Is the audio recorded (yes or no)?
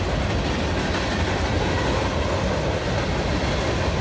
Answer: yes